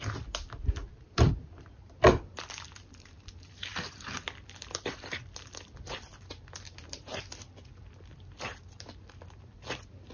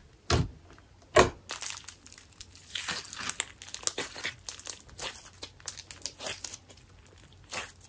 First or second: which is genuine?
second